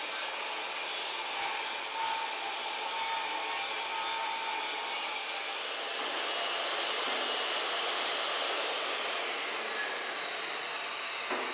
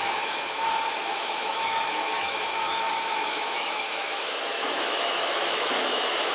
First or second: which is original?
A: first